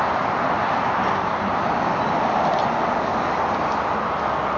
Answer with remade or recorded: recorded